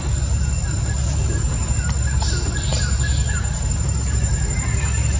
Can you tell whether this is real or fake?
real